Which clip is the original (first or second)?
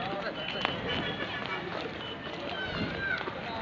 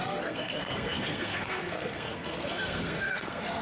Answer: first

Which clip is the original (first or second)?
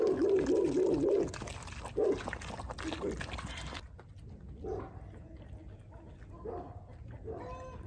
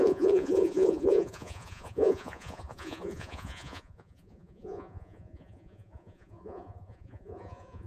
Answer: first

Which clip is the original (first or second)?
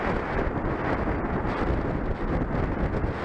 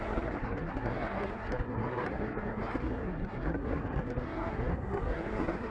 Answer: first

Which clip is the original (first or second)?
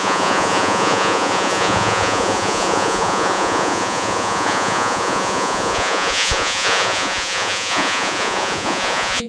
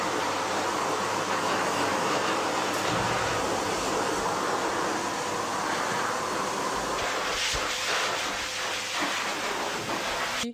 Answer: second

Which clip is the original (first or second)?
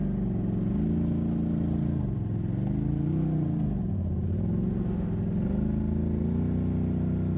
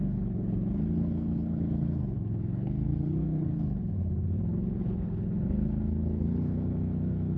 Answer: first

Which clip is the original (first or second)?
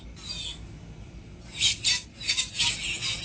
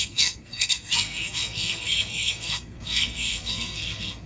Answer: first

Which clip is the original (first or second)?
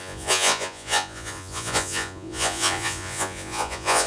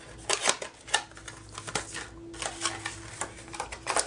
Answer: second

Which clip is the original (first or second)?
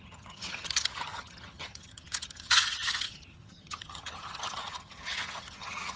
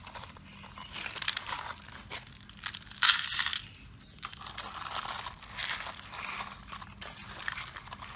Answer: second